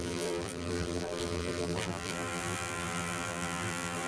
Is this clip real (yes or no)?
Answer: no